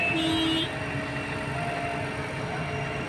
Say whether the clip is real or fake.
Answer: real